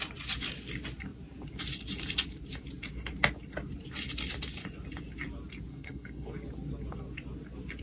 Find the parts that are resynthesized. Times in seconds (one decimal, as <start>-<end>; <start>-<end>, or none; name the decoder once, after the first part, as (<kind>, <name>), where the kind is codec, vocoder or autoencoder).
5.7-6.3 (codec, SNAC)